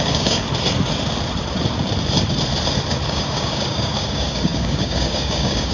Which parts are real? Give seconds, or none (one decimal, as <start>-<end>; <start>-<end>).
0.4-3.1